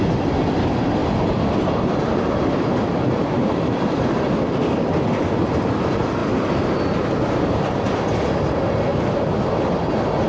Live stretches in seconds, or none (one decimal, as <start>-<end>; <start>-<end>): 0.0-10.3